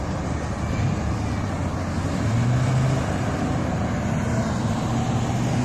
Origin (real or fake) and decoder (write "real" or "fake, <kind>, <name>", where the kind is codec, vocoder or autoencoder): real